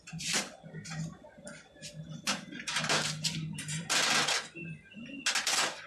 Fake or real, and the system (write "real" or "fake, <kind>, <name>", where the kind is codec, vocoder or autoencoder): real